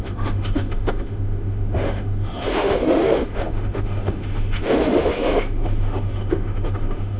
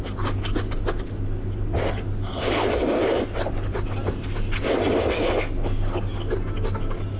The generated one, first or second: first